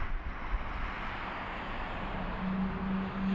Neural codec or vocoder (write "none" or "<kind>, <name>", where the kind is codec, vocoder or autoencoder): none